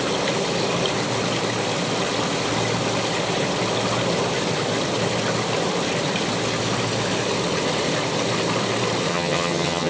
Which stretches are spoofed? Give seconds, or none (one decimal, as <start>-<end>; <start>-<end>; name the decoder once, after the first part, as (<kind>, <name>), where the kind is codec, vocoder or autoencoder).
9.1-9.9 (vocoder, HiFi-GAN)